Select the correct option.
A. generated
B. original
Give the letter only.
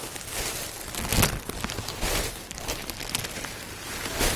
A